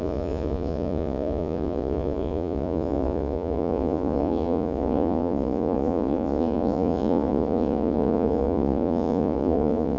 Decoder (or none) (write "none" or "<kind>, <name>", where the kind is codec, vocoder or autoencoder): vocoder, Vocos